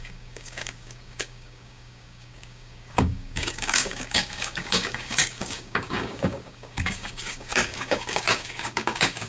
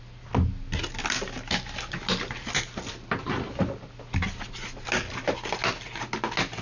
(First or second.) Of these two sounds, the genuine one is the second